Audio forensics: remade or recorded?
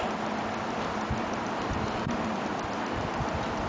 recorded